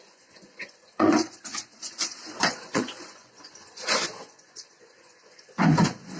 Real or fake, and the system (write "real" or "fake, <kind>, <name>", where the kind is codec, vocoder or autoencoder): fake, vocoder, Vocos